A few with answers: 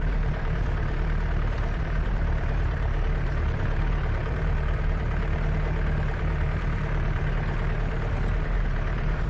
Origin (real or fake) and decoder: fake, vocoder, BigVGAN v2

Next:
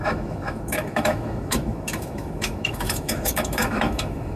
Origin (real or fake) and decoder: fake, autoencoder, DAC-VAE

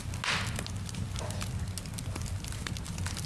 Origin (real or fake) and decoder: real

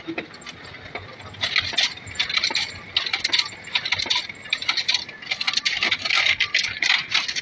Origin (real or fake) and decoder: real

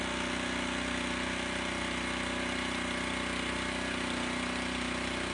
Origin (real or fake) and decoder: real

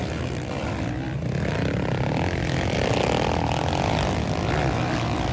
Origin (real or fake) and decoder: real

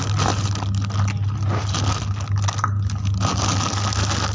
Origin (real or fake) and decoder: real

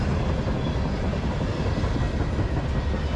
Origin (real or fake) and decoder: real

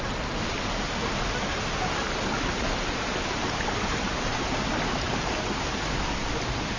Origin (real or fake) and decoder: real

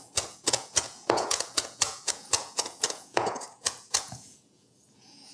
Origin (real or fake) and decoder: fake, vocoder, Vocos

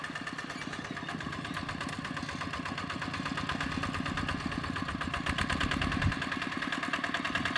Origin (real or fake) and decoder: real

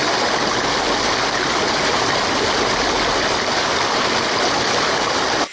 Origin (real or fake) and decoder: real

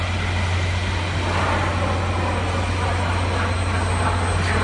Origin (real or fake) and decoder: real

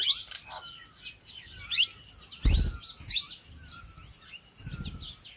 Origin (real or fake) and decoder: real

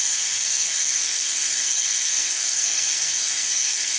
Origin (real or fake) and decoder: fake, codec, SNAC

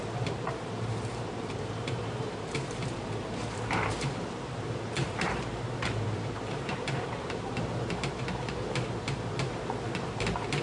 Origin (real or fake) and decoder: fake, vocoder, BigVGAN v2